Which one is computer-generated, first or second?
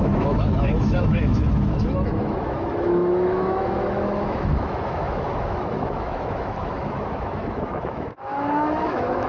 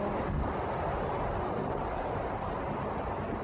first